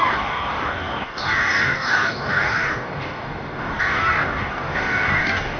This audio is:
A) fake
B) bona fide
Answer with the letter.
A